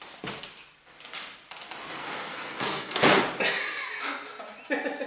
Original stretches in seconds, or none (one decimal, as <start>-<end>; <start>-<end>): 0.0-2.0; 3.2-5.1